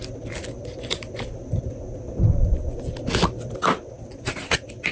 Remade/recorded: recorded